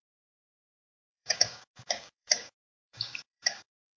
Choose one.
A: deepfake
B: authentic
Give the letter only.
A